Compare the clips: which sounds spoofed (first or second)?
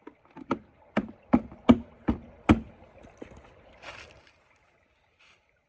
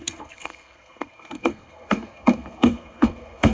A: second